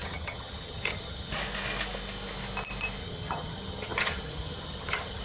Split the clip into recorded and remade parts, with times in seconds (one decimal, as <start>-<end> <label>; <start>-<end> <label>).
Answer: 0.0-1.3 remade; 1.3-3.0 recorded; 3.0-5.2 remade